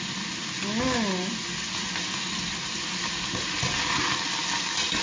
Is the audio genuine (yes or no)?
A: yes